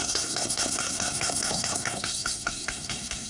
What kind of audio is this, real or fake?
fake